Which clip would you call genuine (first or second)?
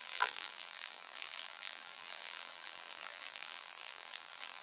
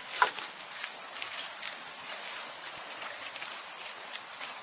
second